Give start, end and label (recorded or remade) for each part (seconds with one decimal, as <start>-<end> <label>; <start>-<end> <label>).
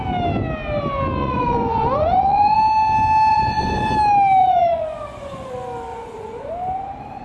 0.0-1.2 recorded; 1.2-2.6 remade; 2.6-3.3 recorded; 3.3-3.9 remade; 3.9-4.4 recorded; 4.4-5.5 remade; 5.5-5.9 recorded; 5.9-6.5 remade; 6.5-7.2 recorded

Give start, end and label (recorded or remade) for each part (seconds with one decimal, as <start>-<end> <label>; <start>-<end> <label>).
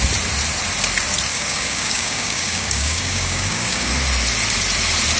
0.0-1.3 recorded; 1.3-3.9 remade; 3.9-5.2 recorded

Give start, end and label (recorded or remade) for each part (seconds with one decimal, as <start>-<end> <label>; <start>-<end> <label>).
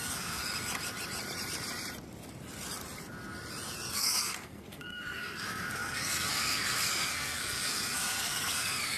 0.0-0.4 remade; 0.4-3.9 recorded; 3.9-9.0 remade